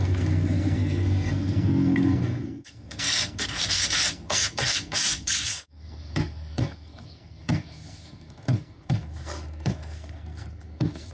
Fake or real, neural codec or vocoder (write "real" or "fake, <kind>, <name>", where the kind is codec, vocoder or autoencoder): fake, codec, SNAC